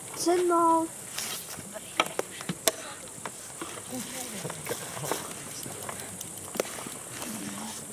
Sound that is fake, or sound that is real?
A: real